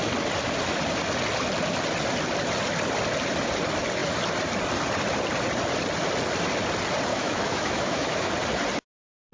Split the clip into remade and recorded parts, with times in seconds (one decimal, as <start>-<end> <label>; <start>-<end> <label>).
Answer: 0.0-7.1 recorded; 7.1-8.3 remade; 8.3-9.3 recorded